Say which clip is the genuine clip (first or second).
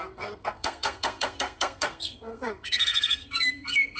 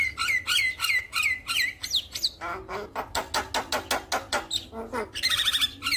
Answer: second